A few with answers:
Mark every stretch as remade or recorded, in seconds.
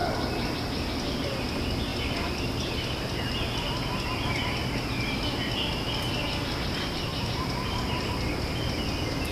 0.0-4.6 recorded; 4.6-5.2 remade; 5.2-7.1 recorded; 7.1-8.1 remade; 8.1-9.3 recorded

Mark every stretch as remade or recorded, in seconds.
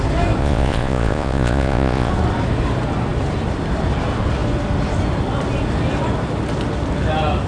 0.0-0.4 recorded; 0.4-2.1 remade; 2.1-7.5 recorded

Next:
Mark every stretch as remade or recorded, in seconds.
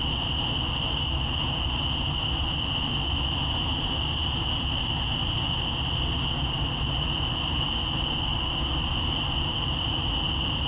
0.0-10.7 recorded